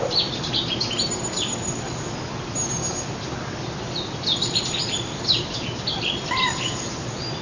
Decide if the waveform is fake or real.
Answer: real